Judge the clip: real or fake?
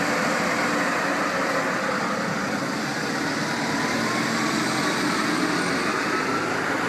real